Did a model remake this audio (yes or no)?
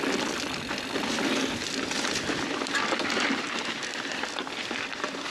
yes